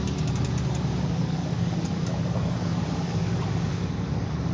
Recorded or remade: remade